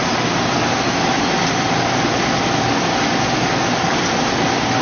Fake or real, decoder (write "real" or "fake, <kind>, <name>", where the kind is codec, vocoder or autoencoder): real